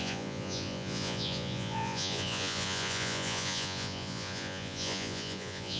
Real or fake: fake